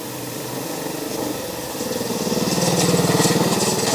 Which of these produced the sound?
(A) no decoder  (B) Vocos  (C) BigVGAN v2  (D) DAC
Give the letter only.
A